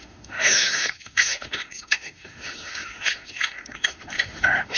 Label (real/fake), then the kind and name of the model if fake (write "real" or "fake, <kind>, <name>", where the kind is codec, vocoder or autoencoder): fake, autoencoder, DAC-VAE